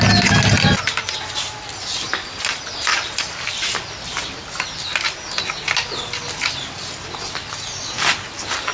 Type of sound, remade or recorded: recorded